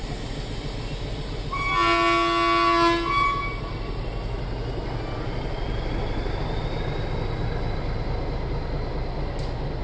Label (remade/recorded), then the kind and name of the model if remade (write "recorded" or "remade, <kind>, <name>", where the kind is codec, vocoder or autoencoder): recorded